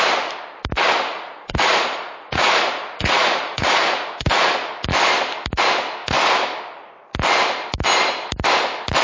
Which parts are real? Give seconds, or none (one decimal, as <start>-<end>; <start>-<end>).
0.0-1.1; 4.5-9.0